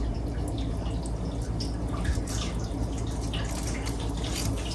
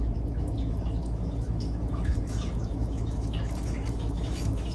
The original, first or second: first